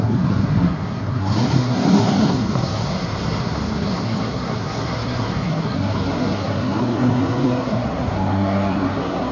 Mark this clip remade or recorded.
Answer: remade